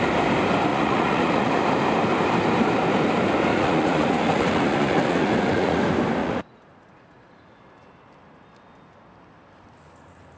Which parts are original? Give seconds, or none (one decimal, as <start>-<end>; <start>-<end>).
0.0-0.7; 1.5-3.5; 5.8-6.2; 7.6-10.4